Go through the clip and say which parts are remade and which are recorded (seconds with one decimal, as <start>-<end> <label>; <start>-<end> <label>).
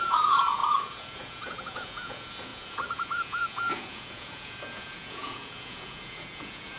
0.0-6.8 remade